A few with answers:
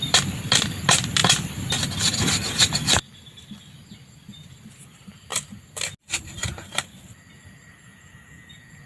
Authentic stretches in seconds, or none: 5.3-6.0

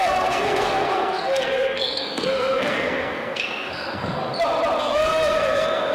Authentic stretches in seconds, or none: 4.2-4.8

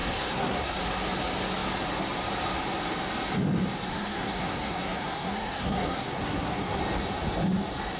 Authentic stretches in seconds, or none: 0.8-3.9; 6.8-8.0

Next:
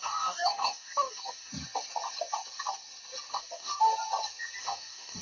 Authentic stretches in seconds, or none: 1.5-3.3; 3.7-4.6

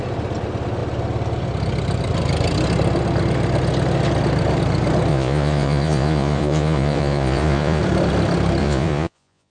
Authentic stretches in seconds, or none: 0.0-5.1; 7.8-8.6

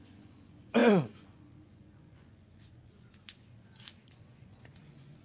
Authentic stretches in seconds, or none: none